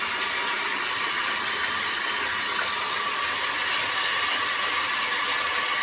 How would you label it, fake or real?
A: real